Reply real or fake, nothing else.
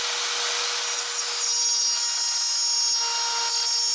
real